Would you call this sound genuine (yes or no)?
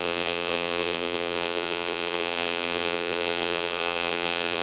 no